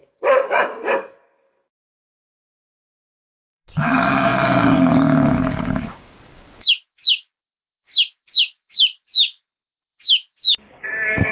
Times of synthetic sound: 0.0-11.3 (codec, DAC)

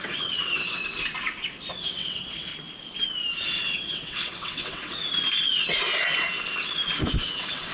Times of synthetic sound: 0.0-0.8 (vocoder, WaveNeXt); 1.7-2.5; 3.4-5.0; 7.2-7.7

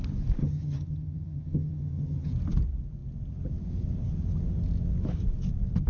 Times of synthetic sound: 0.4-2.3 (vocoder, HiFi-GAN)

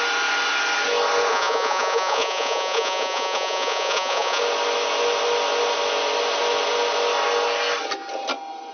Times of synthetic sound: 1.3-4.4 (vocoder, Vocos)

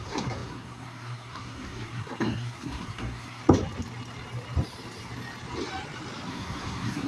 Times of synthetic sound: 0.0-3.4 (codec, SNAC); 6.3-7.1